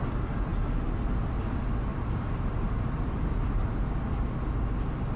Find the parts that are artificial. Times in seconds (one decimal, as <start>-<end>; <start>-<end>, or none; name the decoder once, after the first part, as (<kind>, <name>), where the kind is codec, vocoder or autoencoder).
1.9-3.1 (vocoder, BigVGAN v2)